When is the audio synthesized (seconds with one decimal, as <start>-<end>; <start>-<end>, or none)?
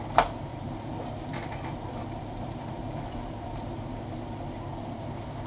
0.5-3.8